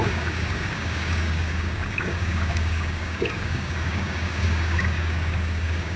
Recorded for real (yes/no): no